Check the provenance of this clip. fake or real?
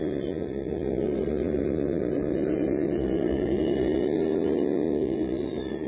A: fake